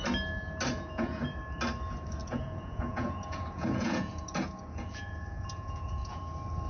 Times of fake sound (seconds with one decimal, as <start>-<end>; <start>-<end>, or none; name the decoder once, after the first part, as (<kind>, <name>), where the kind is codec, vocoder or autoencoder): 0.7-1.4 (vocoder, Vocos); 2.2-6.2